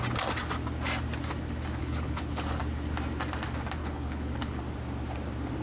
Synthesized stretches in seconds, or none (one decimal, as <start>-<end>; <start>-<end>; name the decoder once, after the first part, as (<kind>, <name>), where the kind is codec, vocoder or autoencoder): 1.8-2.6 (codec, HILCodec); 3.8-4.6